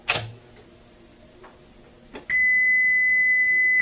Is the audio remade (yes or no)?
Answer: no